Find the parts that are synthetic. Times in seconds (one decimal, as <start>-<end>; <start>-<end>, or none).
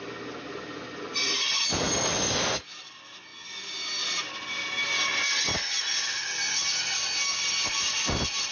none